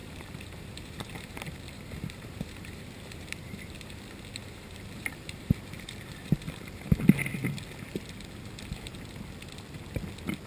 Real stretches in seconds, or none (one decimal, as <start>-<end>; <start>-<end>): 4.0-4.4; 7.0-10.5